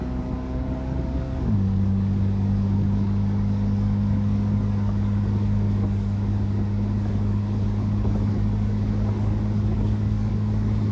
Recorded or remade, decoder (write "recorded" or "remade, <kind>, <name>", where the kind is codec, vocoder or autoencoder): remade, codec, DAC